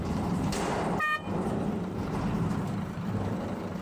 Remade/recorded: remade